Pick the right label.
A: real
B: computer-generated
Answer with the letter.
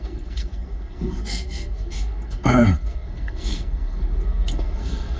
B